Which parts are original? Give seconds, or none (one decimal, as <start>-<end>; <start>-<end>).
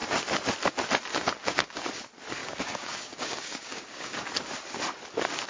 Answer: 0.0-1.1; 1.8-2.4; 4.3-5.5